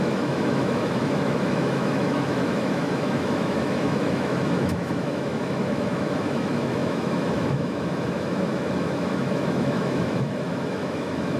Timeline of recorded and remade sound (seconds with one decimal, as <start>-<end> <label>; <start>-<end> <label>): 0.0-11.4 remade